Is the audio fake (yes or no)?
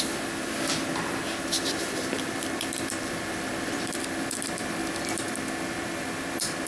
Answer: yes